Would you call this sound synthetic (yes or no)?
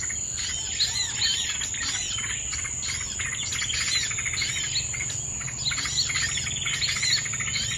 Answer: no